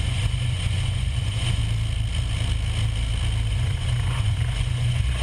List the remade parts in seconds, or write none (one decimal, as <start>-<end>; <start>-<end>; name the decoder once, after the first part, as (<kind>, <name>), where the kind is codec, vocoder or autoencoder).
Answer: 0.0-1.6 (vocoder, Vocos); 3.5-5.2